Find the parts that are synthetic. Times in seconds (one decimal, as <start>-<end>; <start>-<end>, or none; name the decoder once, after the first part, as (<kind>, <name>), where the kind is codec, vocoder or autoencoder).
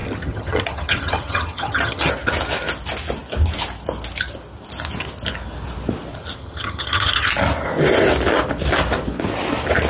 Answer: 0.0-2.1 (vocoder, HiFi-GAN); 6.4-7.3